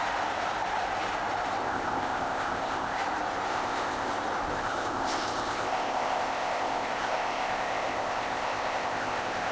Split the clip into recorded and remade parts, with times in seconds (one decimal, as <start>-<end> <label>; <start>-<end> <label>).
0.0-1.6 recorded; 1.6-3.0 remade; 3.0-3.5 recorded; 3.5-4.1 remade; 4.1-4.5 recorded; 4.5-9.5 remade